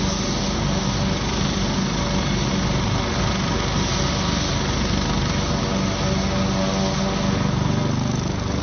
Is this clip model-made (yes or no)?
no